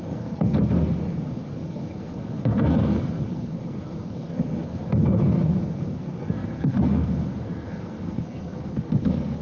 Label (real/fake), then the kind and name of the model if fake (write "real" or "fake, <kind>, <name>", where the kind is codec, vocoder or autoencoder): fake, codec, SNAC